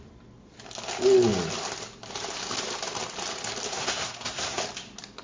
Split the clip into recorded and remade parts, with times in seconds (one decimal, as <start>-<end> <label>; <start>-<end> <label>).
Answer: 0.0-3.7 recorded; 3.7-4.6 remade; 4.6-5.2 recorded